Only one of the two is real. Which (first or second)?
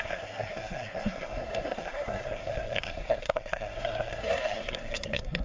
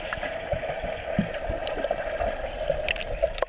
second